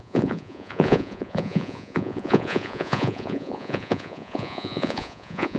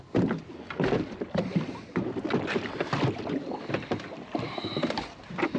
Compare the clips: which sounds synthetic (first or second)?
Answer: first